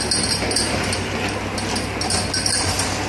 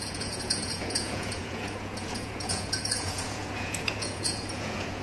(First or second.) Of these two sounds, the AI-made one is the second